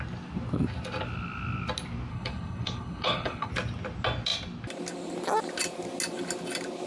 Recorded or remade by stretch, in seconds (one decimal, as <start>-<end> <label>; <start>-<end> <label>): 0.0-2.1 recorded; 2.1-3.5 remade; 3.5-6.9 recorded